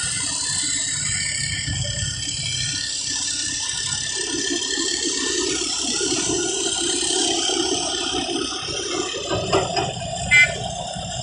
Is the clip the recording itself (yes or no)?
no